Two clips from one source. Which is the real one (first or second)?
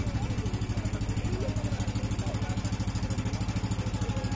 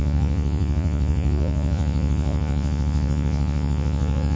first